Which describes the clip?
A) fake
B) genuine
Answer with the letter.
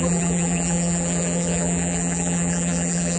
A